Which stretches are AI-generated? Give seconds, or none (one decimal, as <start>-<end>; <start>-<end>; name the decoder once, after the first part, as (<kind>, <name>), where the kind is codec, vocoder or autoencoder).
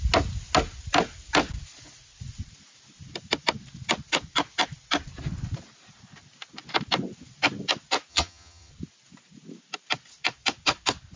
8.1-8.7 (vocoder, HiFi-GAN)